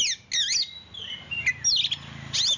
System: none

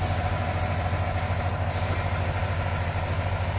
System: none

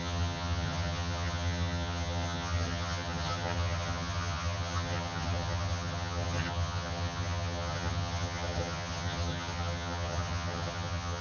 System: vocoder, HiFi-GAN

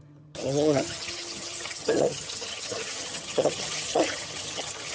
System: vocoder, HiFi-GAN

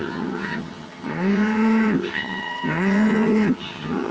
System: vocoder, HiFi-GAN